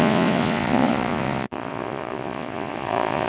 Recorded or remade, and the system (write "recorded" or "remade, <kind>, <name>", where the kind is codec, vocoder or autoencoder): remade, vocoder, Vocos